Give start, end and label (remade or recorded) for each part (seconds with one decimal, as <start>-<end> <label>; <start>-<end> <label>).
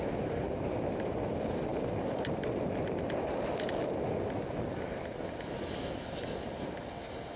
0.0-7.4 recorded